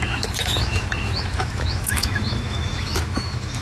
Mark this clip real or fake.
fake